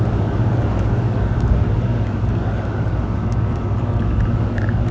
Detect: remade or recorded remade